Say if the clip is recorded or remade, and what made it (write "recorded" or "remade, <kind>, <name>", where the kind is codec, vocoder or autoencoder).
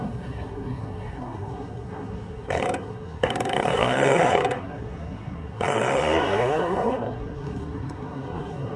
remade, codec, SNAC